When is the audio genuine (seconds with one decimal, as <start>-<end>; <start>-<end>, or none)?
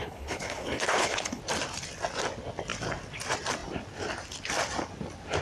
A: 1.4-5.4